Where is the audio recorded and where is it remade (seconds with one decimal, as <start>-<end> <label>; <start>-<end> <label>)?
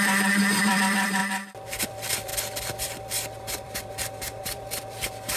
0.0-1.2 remade; 1.2-1.8 recorded; 1.8-2.3 remade; 2.3-2.8 recorded; 2.8-5.4 remade